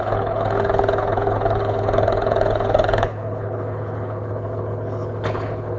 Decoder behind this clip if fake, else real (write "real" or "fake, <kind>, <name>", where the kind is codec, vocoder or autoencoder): fake, codec, HILCodec